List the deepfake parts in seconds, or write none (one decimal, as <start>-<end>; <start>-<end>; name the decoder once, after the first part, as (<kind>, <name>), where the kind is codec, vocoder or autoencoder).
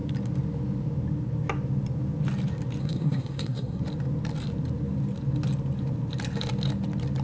2.8-3.8 (codec, SNAC)